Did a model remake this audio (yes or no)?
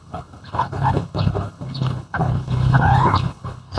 yes